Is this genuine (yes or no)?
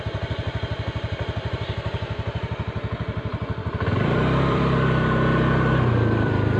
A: no